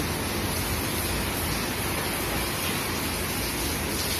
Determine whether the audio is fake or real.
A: real